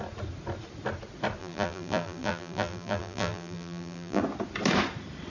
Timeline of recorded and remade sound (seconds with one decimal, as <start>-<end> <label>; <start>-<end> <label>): 0.0-1.4 recorded; 1.4-4.2 remade; 4.2-5.3 recorded